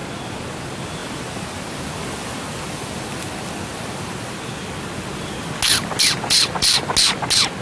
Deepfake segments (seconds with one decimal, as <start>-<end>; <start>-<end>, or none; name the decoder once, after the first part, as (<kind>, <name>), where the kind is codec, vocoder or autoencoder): 1.0-4.3 (vocoder, BigVGAN v2)